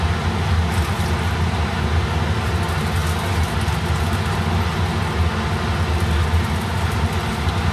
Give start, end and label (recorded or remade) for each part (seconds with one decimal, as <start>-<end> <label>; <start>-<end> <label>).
0.0-7.7 recorded